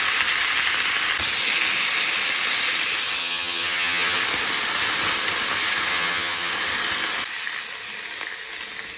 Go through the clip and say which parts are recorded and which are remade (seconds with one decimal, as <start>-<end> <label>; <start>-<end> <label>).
0.0-3.2 recorded; 3.2-4.2 remade; 4.2-5.9 recorded; 5.9-6.5 remade; 6.5-9.0 recorded